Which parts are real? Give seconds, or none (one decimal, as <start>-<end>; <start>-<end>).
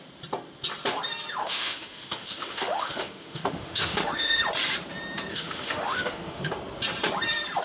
0.0-1.4; 4.4-5.3; 6.5-7.6